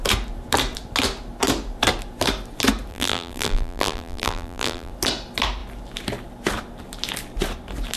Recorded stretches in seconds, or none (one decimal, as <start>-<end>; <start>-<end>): 0.0-2.9; 4.9-8.0